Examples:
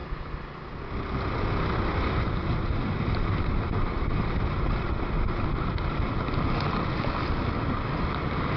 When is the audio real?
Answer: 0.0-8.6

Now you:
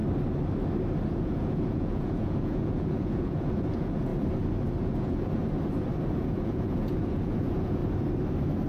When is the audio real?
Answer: 0.0-1.1; 4.1-4.7; 5.4-6.1; 7.8-8.7

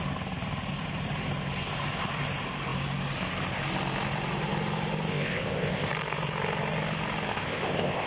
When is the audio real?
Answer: 0.0-5.1; 5.9-7.3

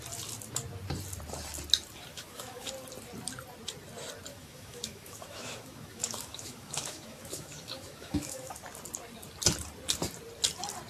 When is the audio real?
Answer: 0.0-2.1; 2.7-4.3; 8.5-10.9

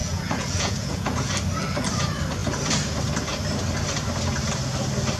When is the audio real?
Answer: 1.3-5.2